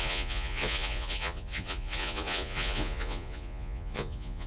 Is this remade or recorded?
remade